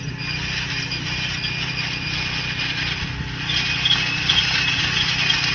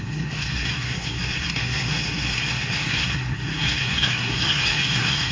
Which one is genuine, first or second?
first